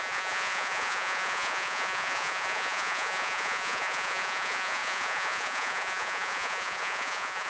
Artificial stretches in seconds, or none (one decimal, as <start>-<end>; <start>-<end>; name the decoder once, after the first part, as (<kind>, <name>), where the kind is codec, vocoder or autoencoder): 0.0-7.5 (vocoder, Vocos)